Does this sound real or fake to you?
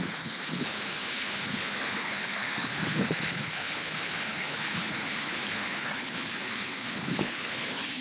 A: fake